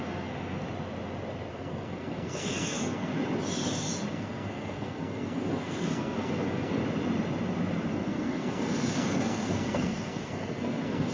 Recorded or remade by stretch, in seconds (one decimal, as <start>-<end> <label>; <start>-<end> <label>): 0.0-0.6 remade; 0.6-1.5 recorded; 1.5-3.1 remade; 3.1-4.1 recorded; 4.1-6.8 remade; 6.8-7.9 recorded; 7.9-11.1 remade

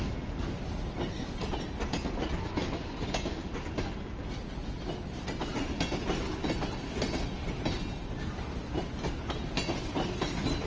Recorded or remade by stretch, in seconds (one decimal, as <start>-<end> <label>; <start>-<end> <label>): 0.0-10.7 recorded